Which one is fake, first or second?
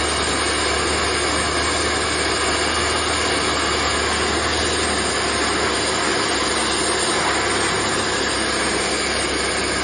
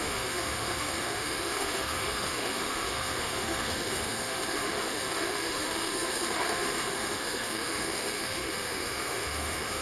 second